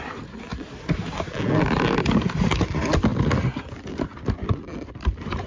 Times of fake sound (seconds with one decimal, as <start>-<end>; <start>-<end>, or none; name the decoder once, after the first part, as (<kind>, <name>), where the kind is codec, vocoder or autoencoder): none